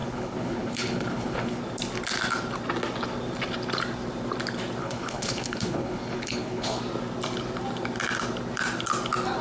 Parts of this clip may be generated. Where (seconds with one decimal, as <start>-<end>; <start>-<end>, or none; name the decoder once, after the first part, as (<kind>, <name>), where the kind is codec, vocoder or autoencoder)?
0.0-1.6 (codec, HILCodec); 4.8-6.8